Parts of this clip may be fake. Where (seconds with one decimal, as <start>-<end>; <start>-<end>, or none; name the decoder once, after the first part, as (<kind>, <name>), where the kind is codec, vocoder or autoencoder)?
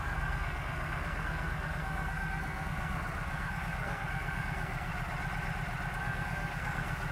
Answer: 0.0-4.9 (codec, SNAC); 6.0-7.1